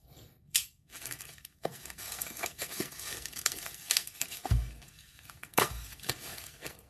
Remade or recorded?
remade